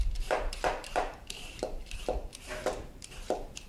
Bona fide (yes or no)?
no